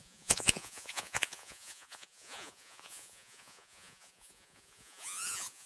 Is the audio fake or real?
fake